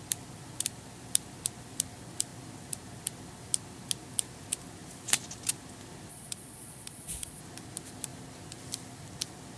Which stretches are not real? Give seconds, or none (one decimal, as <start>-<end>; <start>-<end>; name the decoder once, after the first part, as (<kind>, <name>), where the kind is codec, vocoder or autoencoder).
6.1-7.4 (vocoder, Vocos)